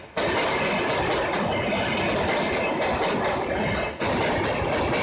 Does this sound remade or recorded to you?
recorded